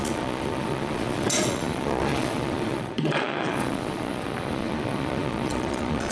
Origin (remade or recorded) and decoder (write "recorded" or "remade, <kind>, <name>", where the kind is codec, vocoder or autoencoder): remade, vocoder, Vocos